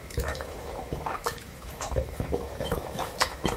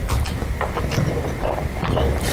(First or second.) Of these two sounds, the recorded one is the second